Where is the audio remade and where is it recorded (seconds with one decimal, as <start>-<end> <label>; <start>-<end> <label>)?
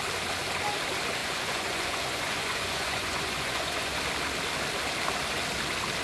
0.0-1.2 recorded; 1.2-4.0 remade; 4.0-6.0 recorded